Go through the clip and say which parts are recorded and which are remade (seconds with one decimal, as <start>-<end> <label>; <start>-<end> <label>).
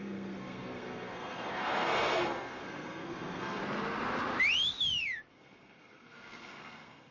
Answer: 0.0-3.6 remade; 3.6-5.3 recorded; 5.3-7.1 remade